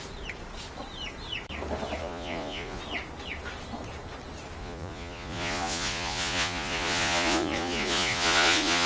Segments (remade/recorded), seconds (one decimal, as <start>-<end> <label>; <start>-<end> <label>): 0.0-2.0 recorded; 2.0-2.8 remade; 2.8-4.6 recorded; 4.6-8.9 remade